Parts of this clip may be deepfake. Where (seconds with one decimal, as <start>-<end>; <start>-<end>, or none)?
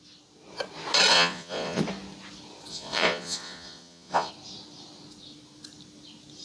1.1-1.8; 2.7-4.3